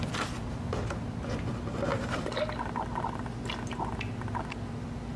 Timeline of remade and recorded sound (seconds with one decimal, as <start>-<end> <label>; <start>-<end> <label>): 0.0-5.2 recorded